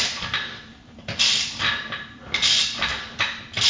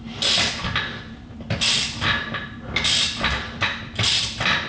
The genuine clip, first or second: second